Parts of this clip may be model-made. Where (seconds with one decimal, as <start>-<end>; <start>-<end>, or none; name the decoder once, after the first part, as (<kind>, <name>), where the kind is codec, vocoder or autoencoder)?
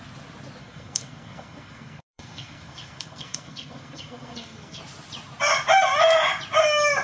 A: 0.6-4.8 (codec, SNAC)